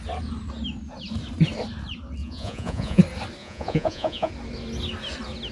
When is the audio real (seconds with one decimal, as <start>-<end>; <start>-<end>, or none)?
0.0-2.2; 3.0-3.4; 4.3-5.5